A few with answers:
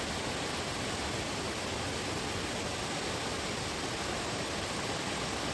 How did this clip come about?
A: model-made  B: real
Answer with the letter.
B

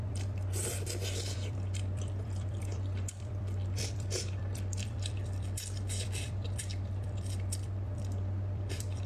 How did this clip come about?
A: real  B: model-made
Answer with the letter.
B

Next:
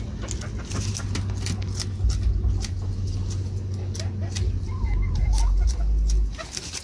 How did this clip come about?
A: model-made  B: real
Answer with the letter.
B